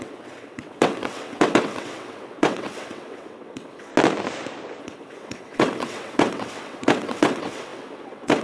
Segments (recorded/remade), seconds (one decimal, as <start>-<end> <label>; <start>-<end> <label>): 0.0-3.9 remade; 3.9-4.8 recorded; 4.8-8.4 remade